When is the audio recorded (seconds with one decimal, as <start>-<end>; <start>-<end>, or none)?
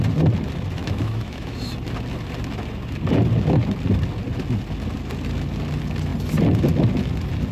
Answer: 0.0-0.8; 1.7-7.5